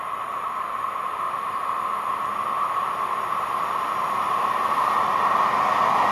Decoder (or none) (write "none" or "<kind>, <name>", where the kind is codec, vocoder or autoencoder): none